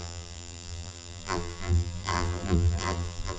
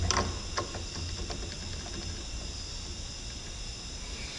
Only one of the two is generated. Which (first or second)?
first